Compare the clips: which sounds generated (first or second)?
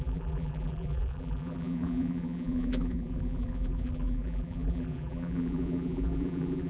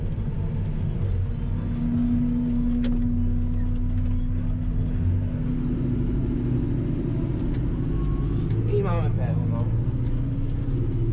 first